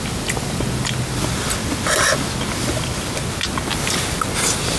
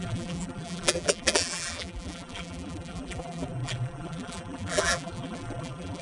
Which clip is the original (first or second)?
first